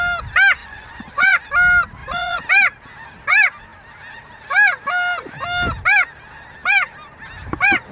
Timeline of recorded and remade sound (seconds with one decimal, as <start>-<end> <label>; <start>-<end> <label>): 0.0-0.6 recorded; 0.6-1.5 remade; 1.5-2.0 recorded; 2.0-2.5 remade; 2.5-7.9 recorded